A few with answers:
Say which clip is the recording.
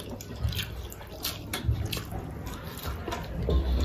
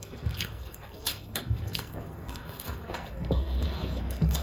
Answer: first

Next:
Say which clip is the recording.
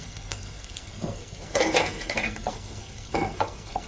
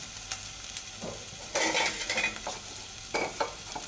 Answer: second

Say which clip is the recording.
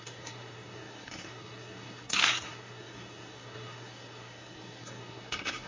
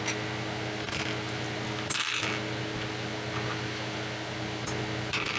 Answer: second